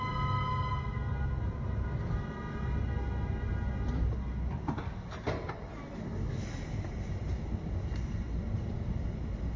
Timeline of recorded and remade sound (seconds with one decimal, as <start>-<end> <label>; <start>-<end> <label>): 0.0-9.6 recorded